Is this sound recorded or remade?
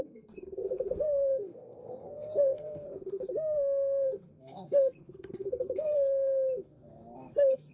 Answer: remade